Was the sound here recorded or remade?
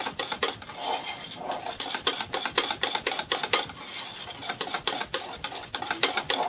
recorded